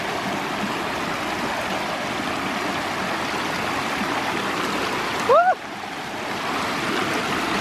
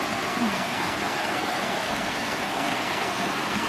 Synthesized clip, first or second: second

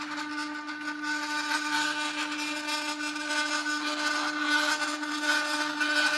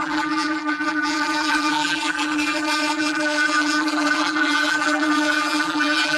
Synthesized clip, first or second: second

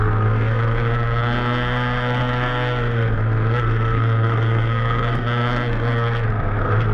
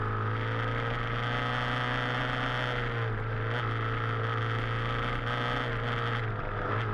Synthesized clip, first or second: first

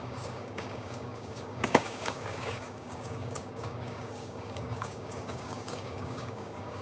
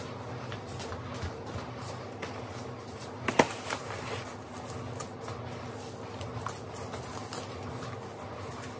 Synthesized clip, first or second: first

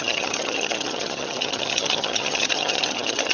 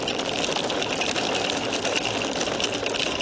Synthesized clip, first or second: first